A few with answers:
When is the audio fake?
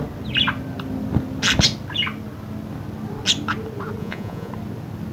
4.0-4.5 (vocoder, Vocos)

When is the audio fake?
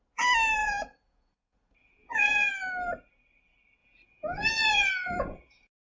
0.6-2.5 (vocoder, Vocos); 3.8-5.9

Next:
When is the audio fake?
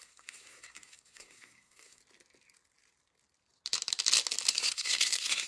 0.0-2.0 (codec, SNAC); 4.5-5.5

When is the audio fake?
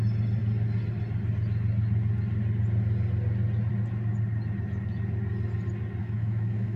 6.0-6.8 (autoencoder, DAC-VAE)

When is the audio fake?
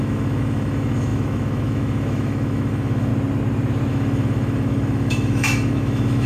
0.0-3.1 (autoencoder, DAC-VAE); 3.9-6.3